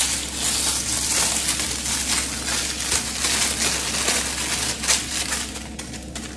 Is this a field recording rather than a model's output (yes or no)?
yes